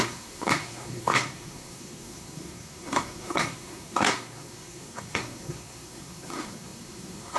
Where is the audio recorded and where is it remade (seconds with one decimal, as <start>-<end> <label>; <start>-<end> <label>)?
0.0-7.4 remade